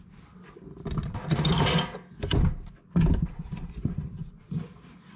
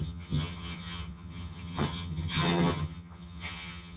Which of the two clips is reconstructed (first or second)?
second